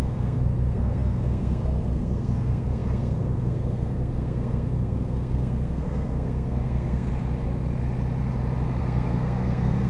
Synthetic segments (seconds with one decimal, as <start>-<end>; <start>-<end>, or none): 0.0-7.1; 8.8-9.9